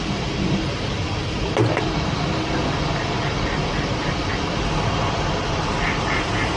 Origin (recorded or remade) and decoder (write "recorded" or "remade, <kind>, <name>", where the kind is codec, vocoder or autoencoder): remade, vocoder, BigVGAN v2